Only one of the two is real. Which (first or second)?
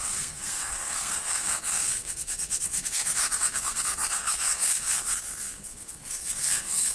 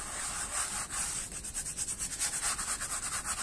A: second